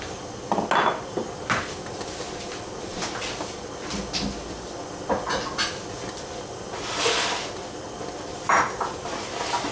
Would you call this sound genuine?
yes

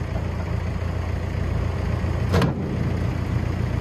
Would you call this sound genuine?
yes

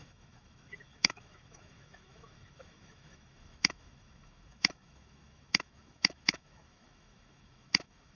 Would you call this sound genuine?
no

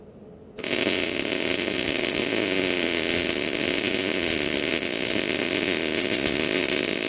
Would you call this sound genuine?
yes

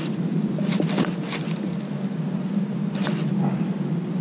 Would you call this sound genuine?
yes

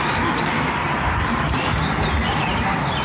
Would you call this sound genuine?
yes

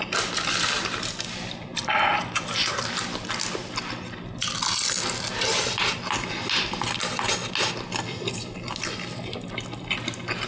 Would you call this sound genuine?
yes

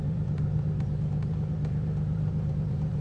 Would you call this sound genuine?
no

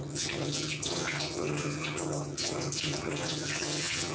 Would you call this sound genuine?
no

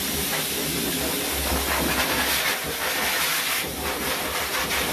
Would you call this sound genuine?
yes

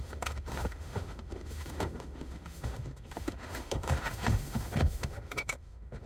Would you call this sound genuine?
no